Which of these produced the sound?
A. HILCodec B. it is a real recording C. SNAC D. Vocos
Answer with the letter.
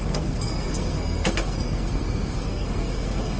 C